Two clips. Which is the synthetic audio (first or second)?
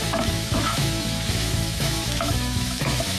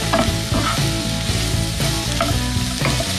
first